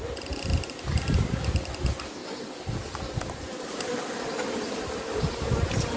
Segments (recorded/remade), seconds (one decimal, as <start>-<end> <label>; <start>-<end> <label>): 0.0-6.0 recorded